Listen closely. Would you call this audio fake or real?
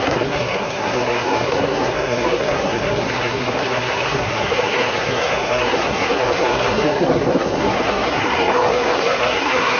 fake